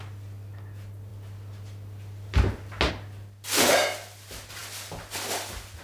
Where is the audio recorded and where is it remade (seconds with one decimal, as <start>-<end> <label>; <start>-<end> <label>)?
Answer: 0.0-5.8 recorded